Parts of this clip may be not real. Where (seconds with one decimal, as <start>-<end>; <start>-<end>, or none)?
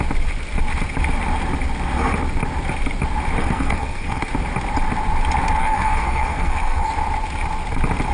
3.4-4.3; 5.6-6.9